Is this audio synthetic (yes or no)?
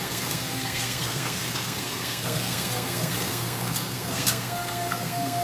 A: yes